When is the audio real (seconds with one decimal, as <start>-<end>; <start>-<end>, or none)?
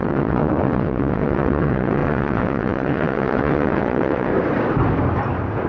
4.3-5.7